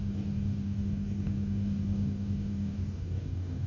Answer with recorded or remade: remade